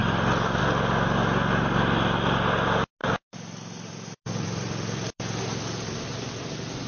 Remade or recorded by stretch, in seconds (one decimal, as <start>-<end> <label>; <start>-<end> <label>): 0.0-0.6 remade; 0.6-3.0 recorded; 3.0-6.4 remade; 6.4-6.9 recorded

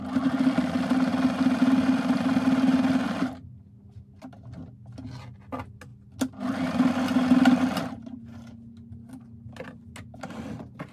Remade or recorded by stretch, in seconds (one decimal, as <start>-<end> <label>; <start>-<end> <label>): 0.0-10.9 recorded

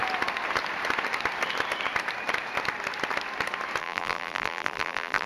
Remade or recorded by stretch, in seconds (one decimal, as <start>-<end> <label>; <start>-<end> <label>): 0.0-3.8 recorded; 3.8-5.3 remade

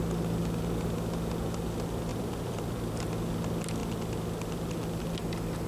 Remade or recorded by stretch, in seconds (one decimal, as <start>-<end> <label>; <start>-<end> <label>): 0.0-2.1 recorded; 2.1-3.1 remade; 3.1-5.7 recorded

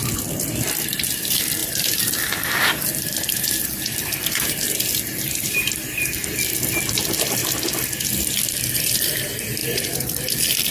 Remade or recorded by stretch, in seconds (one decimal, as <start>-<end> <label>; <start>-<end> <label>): 0.0-7.4 remade; 7.4-8.0 recorded; 8.0-10.7 remade

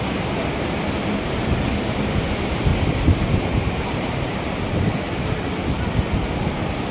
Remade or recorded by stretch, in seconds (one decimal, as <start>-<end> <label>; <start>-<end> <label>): 0.0-2.7 recorded; 2.7-5.2 remade; 5.2-6.9 recorded

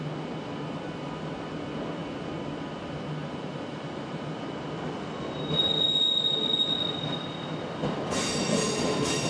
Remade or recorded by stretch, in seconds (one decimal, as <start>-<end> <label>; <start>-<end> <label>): 0.0-3.2 recorded; 3.2-4.4 remade; 4.4-9.3 recorded